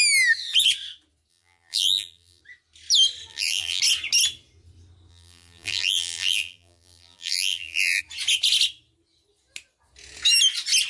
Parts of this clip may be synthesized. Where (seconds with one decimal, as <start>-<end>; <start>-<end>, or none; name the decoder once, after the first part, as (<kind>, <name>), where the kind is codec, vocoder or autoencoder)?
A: 1.3-2.4 (vocoder, BigVGAN v2); 3.3-3.8; 5.1-8.0